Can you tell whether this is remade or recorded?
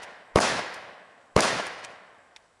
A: remade